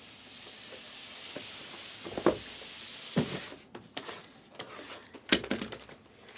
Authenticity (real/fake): real